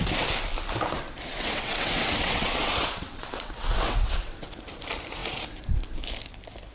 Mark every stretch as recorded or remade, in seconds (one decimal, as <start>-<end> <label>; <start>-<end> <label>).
0.0-1.3 recorded; 1.3-4.5 remade; 4.5-6.7 recorded